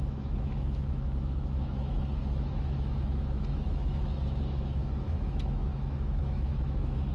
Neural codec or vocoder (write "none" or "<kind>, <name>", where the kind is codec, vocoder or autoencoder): autoencoder, DAC-VAE